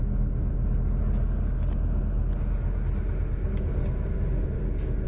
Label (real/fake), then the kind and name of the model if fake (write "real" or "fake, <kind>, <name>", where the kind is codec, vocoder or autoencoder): real